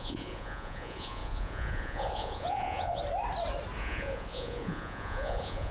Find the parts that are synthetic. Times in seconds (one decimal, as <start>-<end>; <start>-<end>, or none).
0.0-3.0; 3.8-5.7